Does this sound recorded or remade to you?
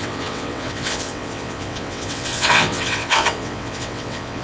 remade